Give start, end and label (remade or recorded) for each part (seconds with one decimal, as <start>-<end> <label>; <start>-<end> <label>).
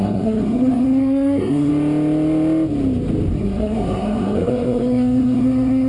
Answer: 0.0-1.7 remade; 1.7-3.3 recorded; 3.3-5.9 remade